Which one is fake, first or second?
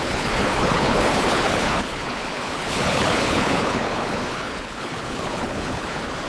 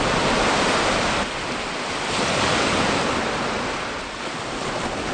first